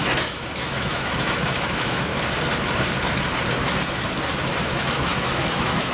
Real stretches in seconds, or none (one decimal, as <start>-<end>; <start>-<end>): 2.1-4.6